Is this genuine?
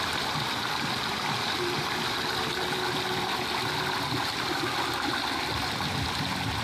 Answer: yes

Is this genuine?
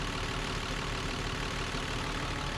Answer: yes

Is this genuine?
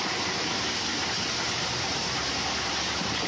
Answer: no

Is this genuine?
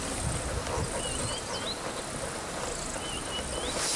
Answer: yes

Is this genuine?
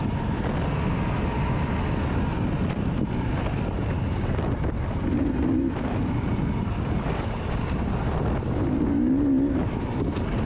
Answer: yes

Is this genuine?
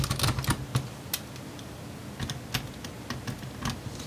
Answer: yes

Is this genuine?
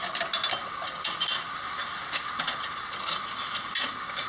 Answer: yes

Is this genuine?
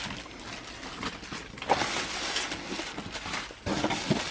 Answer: yes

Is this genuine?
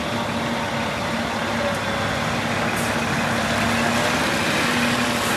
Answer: yes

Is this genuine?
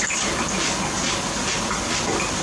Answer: yes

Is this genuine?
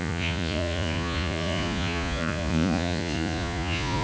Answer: no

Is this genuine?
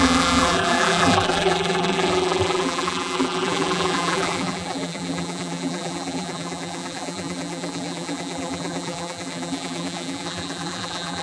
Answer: no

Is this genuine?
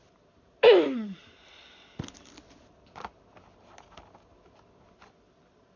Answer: yes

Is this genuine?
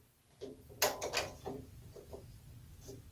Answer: yes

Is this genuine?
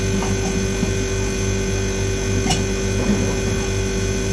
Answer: yes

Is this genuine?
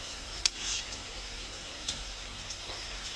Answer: no